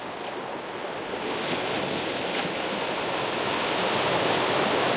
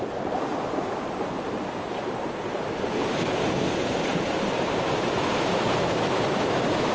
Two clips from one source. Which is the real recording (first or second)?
first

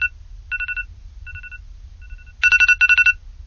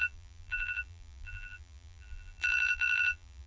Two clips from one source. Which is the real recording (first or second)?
first